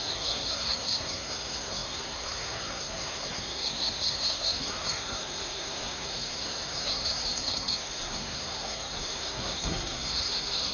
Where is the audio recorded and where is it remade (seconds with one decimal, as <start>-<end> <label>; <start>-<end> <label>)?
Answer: 0.0-10.7 remade